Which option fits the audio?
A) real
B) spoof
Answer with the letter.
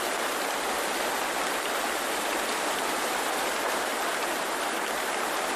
B